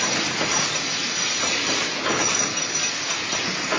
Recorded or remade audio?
recorded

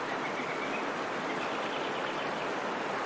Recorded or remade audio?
recorded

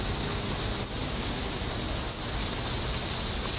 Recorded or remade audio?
recorded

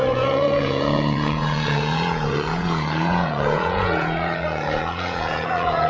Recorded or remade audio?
remade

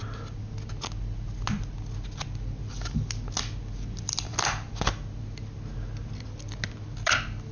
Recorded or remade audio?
recorded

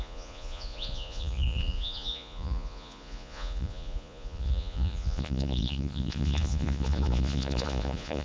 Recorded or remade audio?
remade